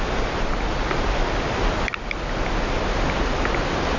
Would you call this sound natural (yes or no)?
yes